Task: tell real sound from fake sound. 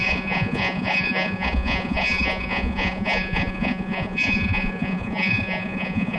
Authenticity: fake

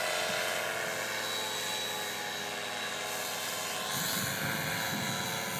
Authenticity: real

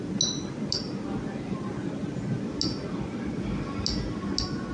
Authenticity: real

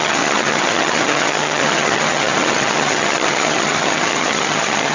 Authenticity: fake